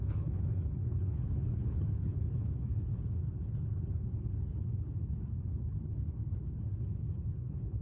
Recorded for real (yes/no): no